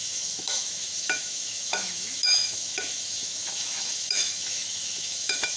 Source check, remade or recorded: remade